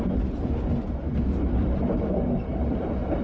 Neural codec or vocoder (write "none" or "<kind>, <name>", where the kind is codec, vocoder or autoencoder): vocoder, BigVGAN v2